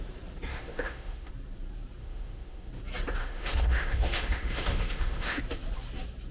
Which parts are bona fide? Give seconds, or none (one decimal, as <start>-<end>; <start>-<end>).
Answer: 0.0-0.5; 1.3-2.0; 2.7-3.2; 5.4-6.3